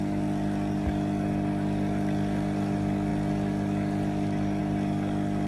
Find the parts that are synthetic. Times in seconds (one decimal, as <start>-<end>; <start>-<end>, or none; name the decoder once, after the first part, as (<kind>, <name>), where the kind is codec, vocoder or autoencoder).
0.0-5.5 (codec, DAC)